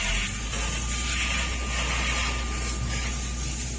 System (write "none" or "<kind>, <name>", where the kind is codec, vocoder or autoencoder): none